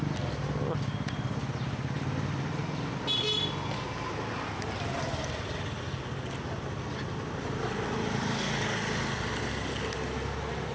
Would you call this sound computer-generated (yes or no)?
no